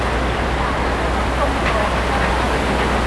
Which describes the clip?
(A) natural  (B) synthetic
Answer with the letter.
A